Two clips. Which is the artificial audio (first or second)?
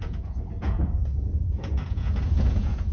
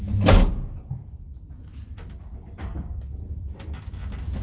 first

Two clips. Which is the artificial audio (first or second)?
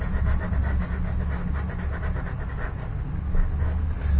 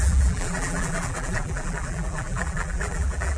second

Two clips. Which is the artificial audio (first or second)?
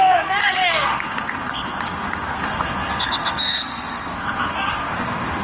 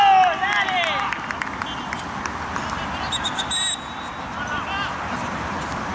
first